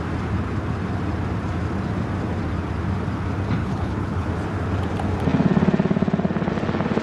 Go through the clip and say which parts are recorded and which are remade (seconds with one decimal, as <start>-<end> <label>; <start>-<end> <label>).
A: 0.0-3.6 recorded; 3.6-4.3 remade; 4.3-7.0 recorded